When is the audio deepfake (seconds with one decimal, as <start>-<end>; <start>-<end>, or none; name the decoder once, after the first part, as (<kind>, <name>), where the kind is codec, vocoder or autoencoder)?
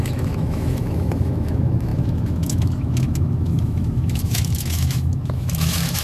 0.0-6.0 (autoencoder, DAC-VAE)